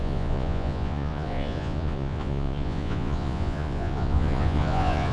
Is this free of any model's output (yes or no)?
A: no